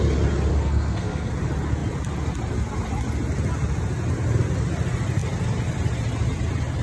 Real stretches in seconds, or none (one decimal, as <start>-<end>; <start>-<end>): 0.0-0.5; 1.3-6.8